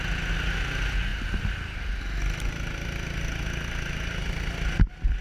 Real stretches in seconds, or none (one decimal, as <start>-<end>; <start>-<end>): 0.0-5.2